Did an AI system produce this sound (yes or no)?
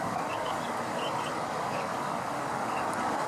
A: yes